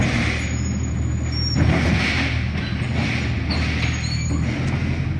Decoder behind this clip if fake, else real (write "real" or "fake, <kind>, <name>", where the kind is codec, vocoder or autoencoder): real